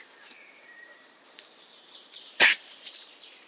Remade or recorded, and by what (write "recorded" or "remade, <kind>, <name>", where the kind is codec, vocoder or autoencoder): remade, vocoder, BigVGAN v2